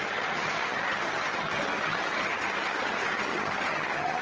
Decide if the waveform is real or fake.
fake